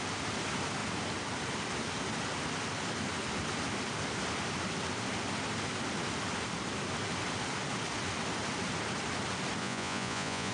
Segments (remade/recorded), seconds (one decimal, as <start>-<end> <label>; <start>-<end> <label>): 0.0-9.6 recorded; 9.6-10.5 remade